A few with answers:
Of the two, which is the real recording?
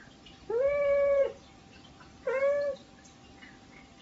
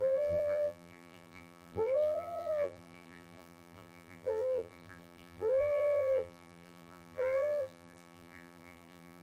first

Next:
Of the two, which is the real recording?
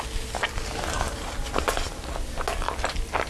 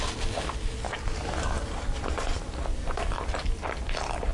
first